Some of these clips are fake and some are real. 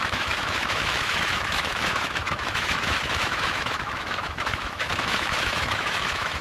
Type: fake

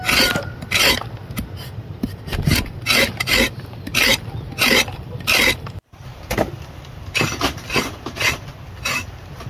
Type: real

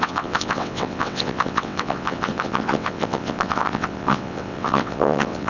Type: fake